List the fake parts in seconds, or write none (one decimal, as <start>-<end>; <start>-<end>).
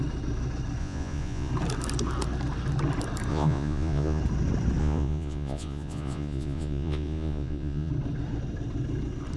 0.8-1.5; 3.3-4.2; 4.8-7.9